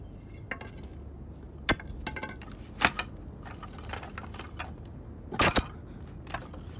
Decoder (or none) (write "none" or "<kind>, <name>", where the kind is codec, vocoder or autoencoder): none